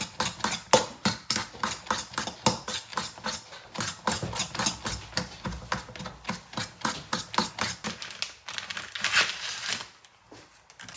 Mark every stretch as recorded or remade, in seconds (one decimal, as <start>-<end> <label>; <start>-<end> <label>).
0.0-11.0 recorded

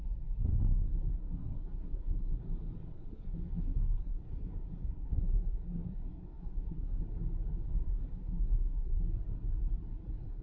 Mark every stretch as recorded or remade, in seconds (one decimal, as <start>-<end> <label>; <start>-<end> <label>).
0.0-1.1 recorded; 1.1-2.4 remade; 2.4-2.9 recorded; 2.9-7.0 remade; 7.0-7.8 recorded; 7.8-9.0 remade; 9.0-10.4 recorded

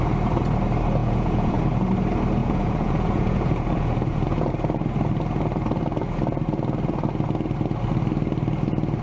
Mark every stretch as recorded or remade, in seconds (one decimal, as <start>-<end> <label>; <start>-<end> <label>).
0.0-1.0 recorded; 1.0-1.6 remade; 1.6-2.4 recorded; 2.4-4.5 remade; 4.5-9.0 recorded

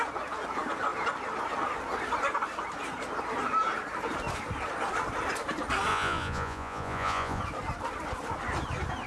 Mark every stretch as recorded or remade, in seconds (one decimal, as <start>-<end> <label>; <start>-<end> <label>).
0.0-5.9 recorded; 5.9-7.4 remade; 7.4-9.1 recorded

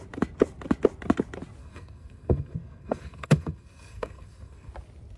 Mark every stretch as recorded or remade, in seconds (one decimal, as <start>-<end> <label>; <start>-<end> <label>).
0.0-1.6 recorded; 1.6-4.7 remade; 4.7-5.2 recorded

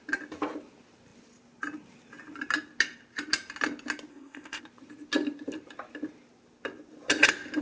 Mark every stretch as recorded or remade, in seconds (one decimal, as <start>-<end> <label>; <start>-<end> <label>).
0.0-4.1 recorded; 4.1-4.6 remade; 4.6-7.6 recorded

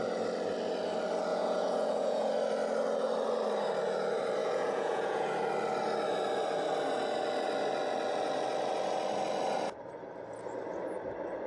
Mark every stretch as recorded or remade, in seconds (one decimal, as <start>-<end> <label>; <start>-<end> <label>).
0.0-1.3 recorded; 1.3-2.3 remade; 2.3-4.4 recorded; 4.4-5.3 remade; 5.3-11.5 recorded

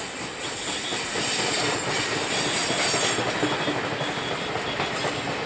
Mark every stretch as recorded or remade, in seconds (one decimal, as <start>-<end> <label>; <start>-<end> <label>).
0.0-5.5 recorded